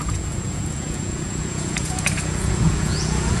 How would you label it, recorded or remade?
remade